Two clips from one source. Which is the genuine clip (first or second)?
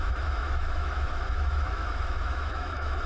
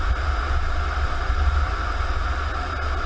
second